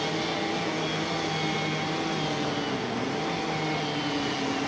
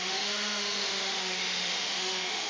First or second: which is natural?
first